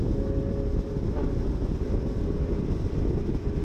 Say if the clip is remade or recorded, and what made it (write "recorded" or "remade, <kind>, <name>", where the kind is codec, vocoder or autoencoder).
recorded